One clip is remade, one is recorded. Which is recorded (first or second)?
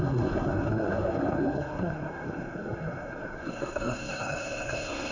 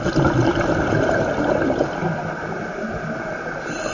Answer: second